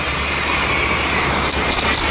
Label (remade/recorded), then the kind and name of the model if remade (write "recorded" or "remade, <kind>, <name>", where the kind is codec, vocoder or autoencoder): recorded